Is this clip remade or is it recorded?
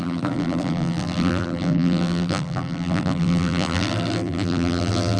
remade